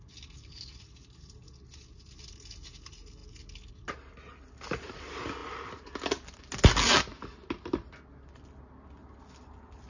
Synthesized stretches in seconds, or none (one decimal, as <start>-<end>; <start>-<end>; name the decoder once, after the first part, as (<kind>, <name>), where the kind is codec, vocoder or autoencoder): none